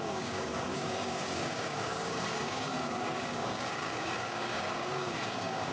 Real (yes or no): no